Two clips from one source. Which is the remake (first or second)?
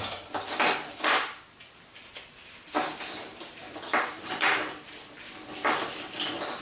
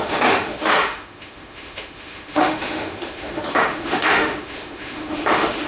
second